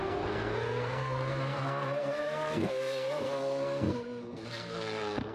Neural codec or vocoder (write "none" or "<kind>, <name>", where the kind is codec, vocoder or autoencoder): codec, SNAC